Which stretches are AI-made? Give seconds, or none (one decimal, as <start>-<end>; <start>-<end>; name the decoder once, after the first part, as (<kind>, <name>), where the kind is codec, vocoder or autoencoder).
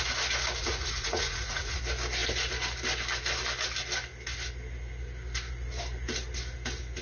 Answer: 0.6-1.8 (vocoder, Vocos)